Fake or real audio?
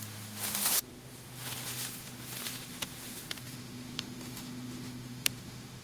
fake